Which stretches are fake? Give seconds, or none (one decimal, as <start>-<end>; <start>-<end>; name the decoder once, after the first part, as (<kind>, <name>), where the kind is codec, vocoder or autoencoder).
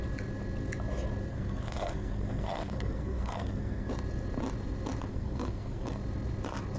1.3-3.9 (codec, SNAC); 5.1-6.0